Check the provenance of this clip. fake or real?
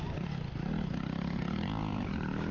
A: real